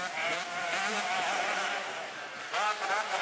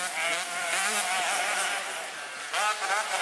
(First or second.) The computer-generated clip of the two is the first